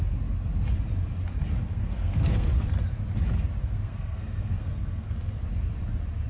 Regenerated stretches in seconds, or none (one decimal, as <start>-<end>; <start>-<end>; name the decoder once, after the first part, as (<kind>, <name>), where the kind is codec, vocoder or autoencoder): 1.7-2.5 (codec, SNAC); 3.6-5.4